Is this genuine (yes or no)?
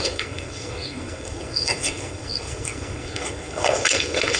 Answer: no